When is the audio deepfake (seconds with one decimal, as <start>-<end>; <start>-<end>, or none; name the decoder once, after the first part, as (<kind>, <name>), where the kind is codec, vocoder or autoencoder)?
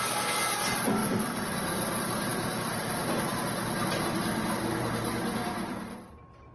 1.0-1.7 (vocoder, BigVGAN v2); 5.4-6.1